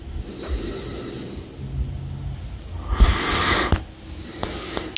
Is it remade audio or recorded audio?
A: recorded